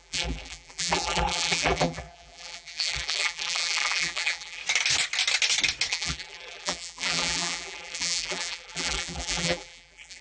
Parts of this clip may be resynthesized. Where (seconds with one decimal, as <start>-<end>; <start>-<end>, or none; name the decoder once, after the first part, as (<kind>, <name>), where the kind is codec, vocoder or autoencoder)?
0.0-4.6 (vocoder, BigVGAN v2); 5.9-10.2